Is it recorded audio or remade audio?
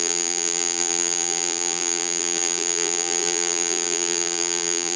remade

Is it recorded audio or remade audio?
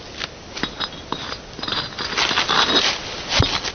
recorded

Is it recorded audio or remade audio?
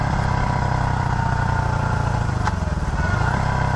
recorded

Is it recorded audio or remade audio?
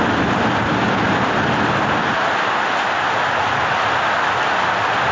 recorded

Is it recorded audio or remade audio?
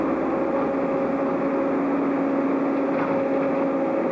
recorded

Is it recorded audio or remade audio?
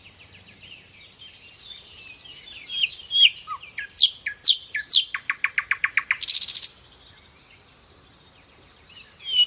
recorded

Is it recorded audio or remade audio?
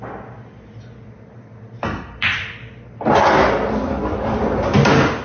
recorded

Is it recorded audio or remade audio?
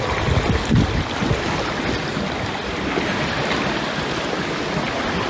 recorded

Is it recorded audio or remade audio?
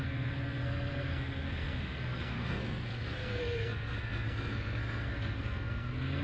remade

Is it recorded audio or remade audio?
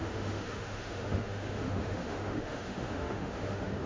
remade